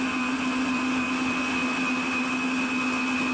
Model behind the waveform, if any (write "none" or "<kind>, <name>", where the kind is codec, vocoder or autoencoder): none